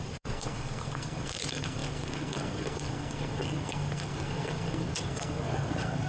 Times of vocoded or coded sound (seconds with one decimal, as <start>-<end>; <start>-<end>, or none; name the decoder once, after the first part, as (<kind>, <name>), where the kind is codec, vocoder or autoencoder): 0.0-6.1 (codec, SNAC)